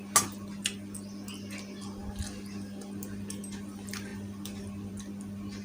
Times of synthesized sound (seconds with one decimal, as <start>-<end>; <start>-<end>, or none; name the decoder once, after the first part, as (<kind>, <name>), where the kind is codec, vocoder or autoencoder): none